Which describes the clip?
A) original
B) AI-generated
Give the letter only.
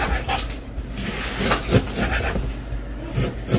A